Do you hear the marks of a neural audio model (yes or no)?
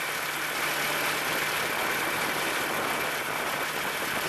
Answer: no